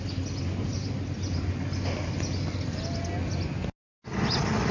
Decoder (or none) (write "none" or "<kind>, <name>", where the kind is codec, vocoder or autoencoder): none